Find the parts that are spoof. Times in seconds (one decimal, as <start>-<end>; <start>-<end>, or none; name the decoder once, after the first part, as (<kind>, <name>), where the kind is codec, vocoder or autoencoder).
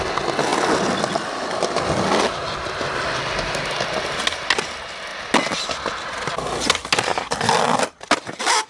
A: none